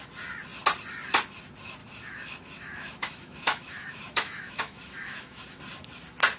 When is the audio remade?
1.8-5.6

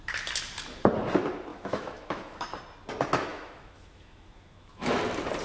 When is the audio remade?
1.5-2.6; 3.3-5.0

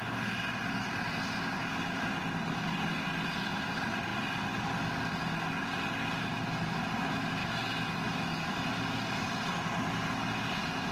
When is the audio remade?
7.4-8.7

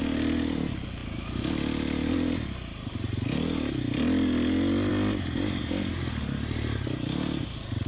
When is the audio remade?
none

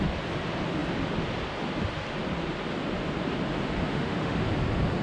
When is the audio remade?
3.9-4.4

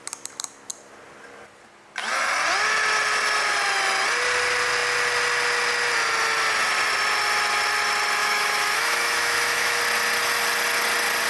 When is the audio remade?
8.2-9.8